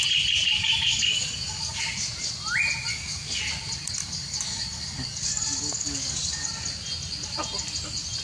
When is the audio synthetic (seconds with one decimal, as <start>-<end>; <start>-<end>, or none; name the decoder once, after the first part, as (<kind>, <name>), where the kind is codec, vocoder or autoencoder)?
0.6-1.8 (codec, DAC); 2.9-3.4; 4.0-6.5